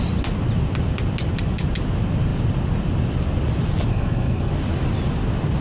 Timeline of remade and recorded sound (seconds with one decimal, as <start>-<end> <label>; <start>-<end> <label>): 0.0-3.9 recorded; 3.9-4.5 remade; 4.5-5.6 recorded